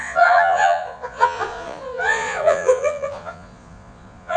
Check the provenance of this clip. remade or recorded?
remade